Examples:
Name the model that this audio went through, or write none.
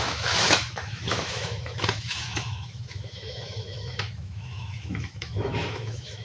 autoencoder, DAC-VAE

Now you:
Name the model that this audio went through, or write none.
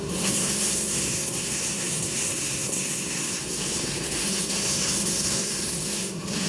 codec, SNAC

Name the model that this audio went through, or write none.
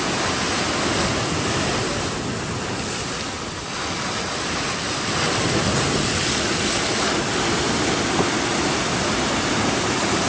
none